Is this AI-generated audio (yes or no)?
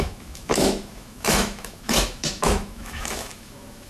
yes